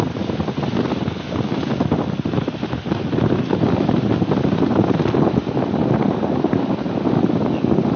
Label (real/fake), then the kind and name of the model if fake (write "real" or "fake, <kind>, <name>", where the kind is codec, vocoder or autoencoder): real